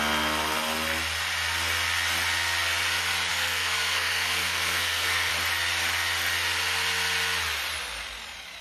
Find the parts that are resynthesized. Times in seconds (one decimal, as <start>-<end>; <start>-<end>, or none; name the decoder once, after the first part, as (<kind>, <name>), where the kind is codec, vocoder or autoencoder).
3.3-5.3 (codec, SNAC)